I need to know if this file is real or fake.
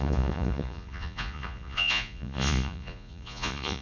fake